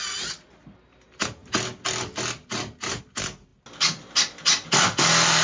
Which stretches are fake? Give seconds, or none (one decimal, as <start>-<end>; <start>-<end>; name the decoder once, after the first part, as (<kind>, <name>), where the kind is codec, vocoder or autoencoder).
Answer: none